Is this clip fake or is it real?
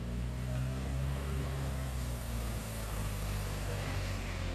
fake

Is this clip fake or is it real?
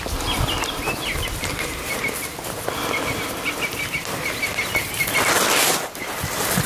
real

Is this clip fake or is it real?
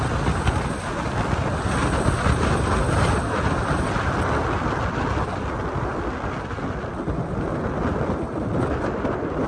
real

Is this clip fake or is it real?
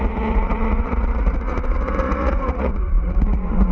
fake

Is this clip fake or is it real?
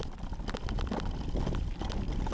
real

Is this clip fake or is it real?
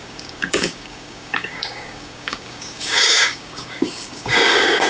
fake